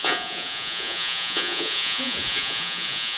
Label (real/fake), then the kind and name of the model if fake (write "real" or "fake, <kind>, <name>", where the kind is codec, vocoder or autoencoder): fake, vocoder, Vocos